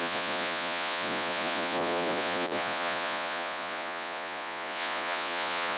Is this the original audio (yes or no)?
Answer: no